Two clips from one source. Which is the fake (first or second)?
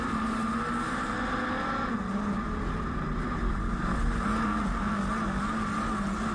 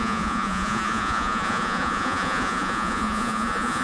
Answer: second